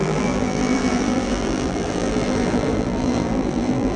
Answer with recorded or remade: remade